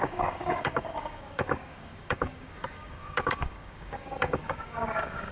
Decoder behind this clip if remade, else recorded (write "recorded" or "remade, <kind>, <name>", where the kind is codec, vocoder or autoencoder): remade, codec, DAC